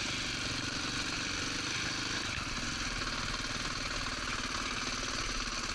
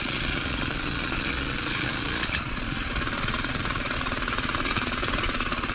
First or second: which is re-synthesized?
second